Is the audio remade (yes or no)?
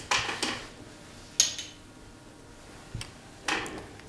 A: no